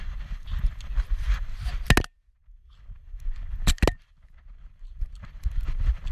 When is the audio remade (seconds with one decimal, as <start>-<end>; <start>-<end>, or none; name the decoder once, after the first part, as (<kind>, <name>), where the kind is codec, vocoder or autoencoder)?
none